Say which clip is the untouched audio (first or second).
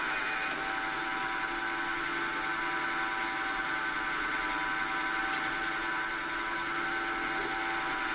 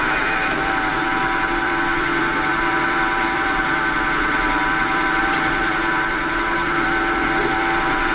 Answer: first